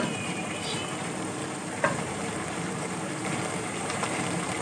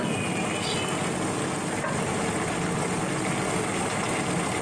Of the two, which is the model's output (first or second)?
first